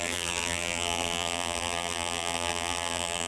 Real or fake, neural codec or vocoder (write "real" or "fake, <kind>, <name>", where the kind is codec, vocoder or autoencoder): fake, vocoder, BigVGAN v2